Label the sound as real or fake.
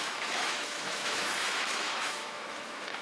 fake